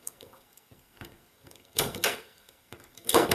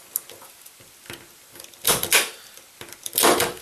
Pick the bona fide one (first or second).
second